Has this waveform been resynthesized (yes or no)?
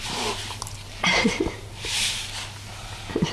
no